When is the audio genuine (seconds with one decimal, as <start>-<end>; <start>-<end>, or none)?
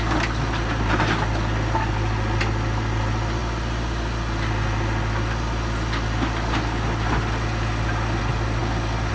0.0-9.1